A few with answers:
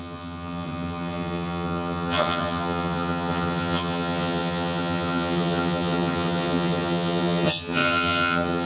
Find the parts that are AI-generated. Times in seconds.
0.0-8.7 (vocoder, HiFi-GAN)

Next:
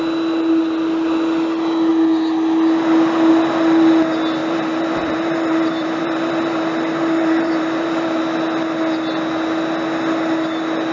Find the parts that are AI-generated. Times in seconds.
4.4-8.2 (vocoder, BigVGAN v2)

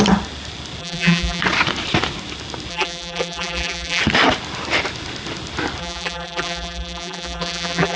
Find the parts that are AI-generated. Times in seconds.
0.8-1.4 (vocoder, BigVGAN v2); 2.7-4.0; 5.8-8.0

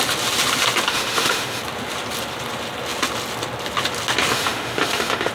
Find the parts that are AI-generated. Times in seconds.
0.9-1.6 (autoencoder, DAC-VAE); 4.3-5.3